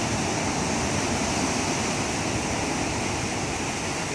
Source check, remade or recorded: recorded